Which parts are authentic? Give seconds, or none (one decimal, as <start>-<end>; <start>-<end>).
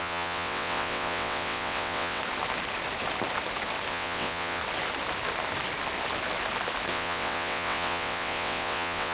2.2-3.9; 4.6-6.9